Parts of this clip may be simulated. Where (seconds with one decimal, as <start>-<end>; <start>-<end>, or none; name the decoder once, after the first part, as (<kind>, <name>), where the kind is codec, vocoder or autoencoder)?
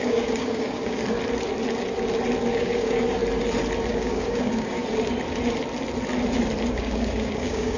0.0-1.0 (codec, DAC); 2.5-3.2; 3.9-4.8; 6.7-7.8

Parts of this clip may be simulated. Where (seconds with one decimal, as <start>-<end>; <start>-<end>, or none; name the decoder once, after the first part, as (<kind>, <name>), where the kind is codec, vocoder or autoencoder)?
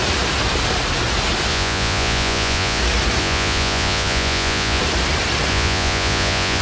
1.5-2.8 (vocoder, Vocos); 3.2-4.8; 5.5-6.6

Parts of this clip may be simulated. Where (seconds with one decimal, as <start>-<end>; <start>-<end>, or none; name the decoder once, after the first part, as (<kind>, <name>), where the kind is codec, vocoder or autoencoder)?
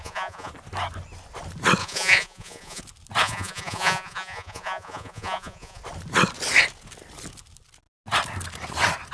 0.0-0.5 (vocoder, Vocos); 1.8-2.8; 3.2-5.8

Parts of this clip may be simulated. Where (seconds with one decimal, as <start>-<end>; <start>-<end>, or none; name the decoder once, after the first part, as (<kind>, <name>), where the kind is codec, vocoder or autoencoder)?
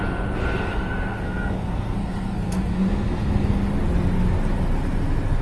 0.7-3.6 (codec, SNAC)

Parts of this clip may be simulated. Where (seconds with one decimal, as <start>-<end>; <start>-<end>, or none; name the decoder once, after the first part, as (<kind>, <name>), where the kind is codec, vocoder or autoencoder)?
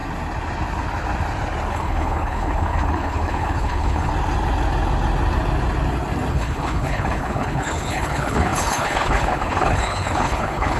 1.7-4.1 (codec, HILCodec); 6.3-10.8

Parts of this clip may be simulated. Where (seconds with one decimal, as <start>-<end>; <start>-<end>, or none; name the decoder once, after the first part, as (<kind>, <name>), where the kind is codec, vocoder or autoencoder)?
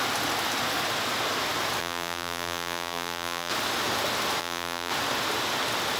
1.8-3.5 (vocoder, BigVGAN v2); 4.4-4.9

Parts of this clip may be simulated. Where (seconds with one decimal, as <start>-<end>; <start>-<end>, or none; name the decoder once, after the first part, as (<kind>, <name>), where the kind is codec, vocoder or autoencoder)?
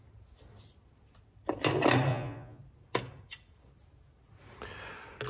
2.1-2.6 (vocoder, Vocos)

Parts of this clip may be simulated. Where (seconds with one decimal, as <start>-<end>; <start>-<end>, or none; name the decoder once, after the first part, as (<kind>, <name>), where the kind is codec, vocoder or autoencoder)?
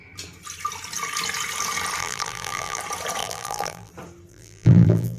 2.0-2.8 (vocoder, BigVGAN v2); 3.2-3.9; 4.3-5.2